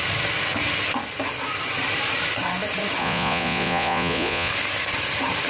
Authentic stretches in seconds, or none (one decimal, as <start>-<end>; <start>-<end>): 0.0-3.0; 4.5-5.5